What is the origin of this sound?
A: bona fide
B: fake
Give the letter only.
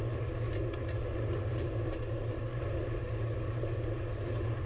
A